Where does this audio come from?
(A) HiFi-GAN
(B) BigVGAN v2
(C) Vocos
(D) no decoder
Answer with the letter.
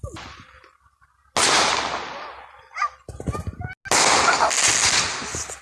D